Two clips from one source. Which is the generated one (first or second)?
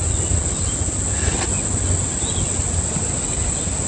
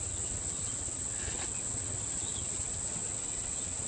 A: second